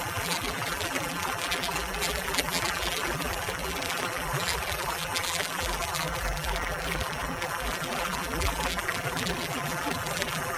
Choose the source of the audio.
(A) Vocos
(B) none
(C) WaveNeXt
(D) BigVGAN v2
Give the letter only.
D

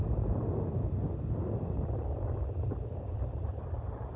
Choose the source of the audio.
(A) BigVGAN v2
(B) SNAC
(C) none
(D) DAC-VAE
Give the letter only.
C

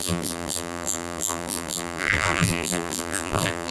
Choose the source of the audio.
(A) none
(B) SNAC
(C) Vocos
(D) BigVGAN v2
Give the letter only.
D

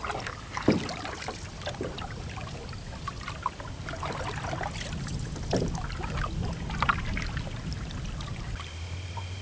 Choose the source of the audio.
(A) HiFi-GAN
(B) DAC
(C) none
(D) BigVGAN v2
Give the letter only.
C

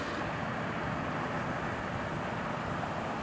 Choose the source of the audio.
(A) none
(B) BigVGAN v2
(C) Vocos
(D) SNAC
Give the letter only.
A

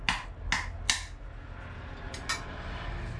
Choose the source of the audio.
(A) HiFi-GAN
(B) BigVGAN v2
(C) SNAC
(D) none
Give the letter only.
D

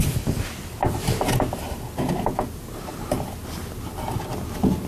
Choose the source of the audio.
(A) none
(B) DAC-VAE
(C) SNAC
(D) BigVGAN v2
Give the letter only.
A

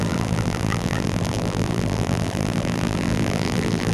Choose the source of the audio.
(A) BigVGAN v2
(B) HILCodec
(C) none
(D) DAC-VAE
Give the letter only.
A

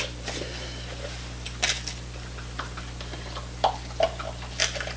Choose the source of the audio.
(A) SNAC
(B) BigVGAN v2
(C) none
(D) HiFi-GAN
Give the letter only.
C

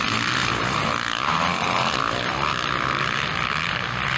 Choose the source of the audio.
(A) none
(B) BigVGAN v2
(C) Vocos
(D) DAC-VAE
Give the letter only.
A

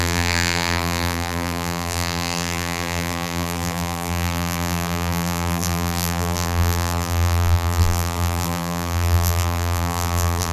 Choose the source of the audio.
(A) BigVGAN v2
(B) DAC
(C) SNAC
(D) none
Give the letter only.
A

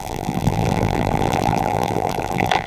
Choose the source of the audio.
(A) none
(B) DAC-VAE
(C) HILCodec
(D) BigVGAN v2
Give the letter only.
D